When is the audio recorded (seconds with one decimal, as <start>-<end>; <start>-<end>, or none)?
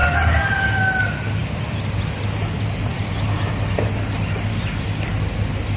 0.0-5.8